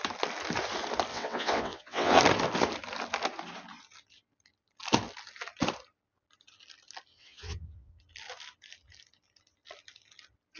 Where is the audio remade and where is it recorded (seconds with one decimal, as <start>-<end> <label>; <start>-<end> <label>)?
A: 0.0-1.1 recorded; 1.1-2.2 remade; 2.2-7.1 recorded; 7.1-7.9 remade; 7.9-10.6 recorded